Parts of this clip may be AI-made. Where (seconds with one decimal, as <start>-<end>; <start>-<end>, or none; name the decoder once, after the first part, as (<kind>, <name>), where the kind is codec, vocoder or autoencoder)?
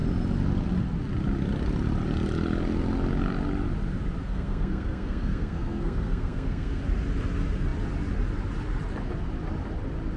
4.2-6.8 (codec, SNAC)